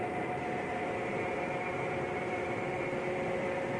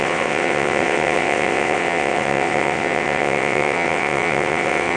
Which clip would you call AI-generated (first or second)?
second